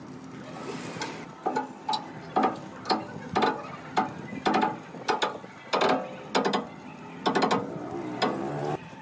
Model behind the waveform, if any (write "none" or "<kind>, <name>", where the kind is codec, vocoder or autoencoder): none